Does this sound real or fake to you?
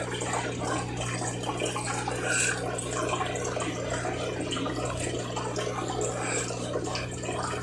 real